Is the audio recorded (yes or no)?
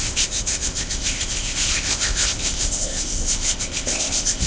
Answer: no